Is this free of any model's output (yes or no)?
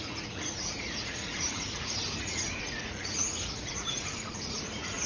no